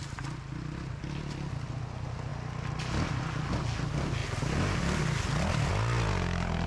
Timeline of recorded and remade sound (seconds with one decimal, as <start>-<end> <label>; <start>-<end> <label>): 0.0-6.7 recorded